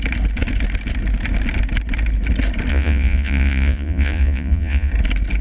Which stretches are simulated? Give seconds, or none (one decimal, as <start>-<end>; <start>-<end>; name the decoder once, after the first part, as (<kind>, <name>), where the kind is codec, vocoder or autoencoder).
2.7-4.9 (vocoder, Vocos)